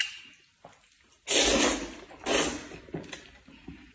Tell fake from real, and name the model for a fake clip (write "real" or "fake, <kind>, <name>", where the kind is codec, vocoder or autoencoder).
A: real